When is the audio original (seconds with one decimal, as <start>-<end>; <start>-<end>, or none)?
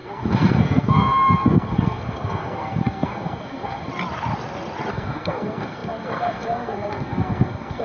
3.9-4.9